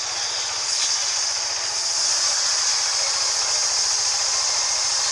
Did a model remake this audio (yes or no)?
no